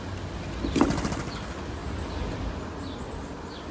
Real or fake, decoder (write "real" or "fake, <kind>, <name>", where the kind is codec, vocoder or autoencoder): real